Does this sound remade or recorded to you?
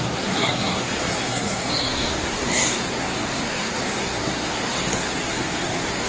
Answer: remade